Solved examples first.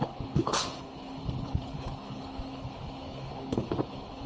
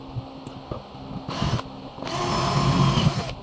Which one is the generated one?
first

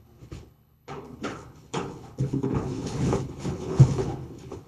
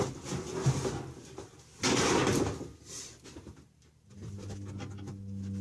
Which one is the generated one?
first